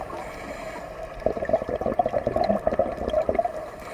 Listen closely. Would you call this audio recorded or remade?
recorded